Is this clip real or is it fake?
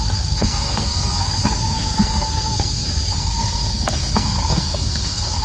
fake